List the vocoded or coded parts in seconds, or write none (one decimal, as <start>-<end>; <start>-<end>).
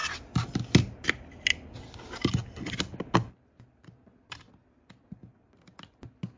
none